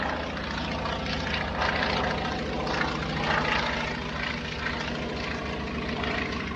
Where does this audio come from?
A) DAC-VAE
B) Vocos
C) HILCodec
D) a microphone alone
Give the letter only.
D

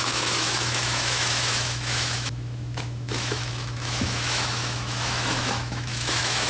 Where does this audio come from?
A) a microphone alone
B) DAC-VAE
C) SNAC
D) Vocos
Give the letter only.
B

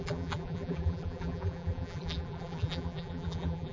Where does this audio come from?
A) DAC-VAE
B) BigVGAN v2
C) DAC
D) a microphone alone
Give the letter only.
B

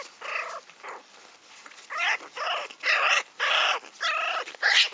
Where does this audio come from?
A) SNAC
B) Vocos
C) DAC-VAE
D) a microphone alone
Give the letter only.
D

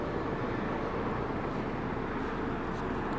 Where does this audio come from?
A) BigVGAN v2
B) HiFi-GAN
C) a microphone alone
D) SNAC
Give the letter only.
C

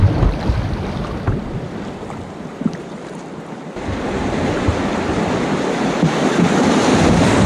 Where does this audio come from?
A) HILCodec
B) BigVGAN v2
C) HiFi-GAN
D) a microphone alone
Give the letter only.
D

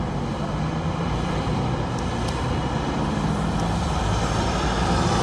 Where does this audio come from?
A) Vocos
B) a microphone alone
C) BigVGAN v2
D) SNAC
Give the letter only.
B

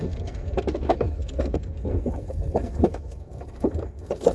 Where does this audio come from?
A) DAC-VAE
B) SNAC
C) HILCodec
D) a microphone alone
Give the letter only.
B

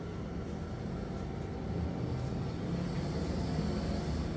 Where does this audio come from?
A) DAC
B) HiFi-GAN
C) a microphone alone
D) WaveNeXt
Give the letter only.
C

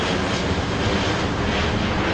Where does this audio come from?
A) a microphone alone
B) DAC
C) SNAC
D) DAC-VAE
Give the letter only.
A